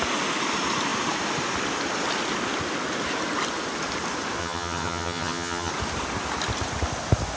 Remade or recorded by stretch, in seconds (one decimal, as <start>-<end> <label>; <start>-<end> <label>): 0.0-4.4 recorded; 4.4-5.7 remade; 5.7-7.4 recorded